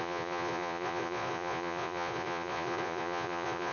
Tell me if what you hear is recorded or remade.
remade